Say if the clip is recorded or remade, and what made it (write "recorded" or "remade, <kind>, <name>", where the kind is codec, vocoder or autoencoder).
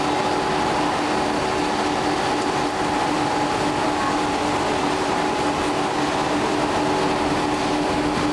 recorded